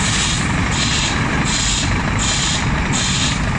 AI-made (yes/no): yes